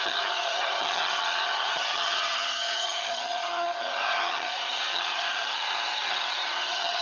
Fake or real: fake